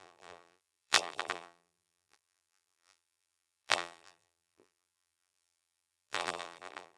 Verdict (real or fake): fake